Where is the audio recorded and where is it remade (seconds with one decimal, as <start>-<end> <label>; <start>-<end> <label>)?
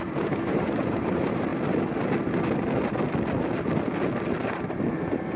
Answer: 0.0-1.5 remade; 1.5-4.7 recorded; 4.7-5.4 remade